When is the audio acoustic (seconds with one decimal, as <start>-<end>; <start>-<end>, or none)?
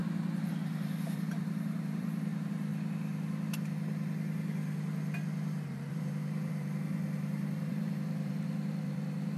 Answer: 0.0-0.5; 2.7-5.9